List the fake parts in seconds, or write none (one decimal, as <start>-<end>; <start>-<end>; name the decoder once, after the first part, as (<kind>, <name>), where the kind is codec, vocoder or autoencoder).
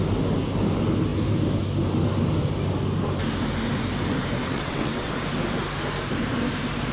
4.4-5.1 (vocoder, WaveNeXt)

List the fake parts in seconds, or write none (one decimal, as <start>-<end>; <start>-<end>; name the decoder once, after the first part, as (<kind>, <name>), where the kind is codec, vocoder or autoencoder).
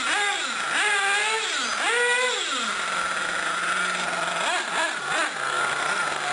none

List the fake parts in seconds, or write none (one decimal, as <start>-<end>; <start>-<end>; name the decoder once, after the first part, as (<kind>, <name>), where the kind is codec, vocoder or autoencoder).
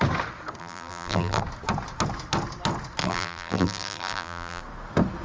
0.6-1.4 (vocoder, BigVGAN v2); 3.0-4.6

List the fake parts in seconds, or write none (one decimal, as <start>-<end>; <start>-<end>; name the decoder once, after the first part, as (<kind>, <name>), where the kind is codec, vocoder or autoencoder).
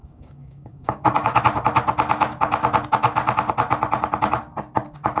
0.0-1.4 (codec, DAC)